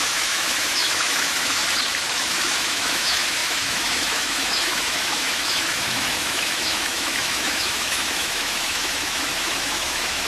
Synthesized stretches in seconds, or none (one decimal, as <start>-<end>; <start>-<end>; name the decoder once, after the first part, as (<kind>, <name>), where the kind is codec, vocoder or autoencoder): 0.0-1.6 (autoencoder, DAC-VAE); 2.1-10.3